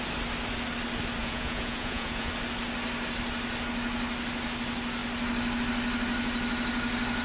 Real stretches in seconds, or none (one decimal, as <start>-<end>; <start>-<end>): 0.0-1.2; 2.3-7.2